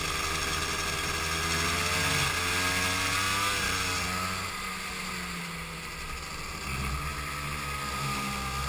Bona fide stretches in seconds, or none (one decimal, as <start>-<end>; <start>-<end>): 0.0-8.7